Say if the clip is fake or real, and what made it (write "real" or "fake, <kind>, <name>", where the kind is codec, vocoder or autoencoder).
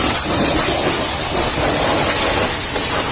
real